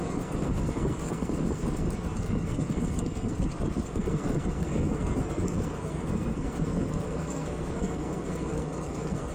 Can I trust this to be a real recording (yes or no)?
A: no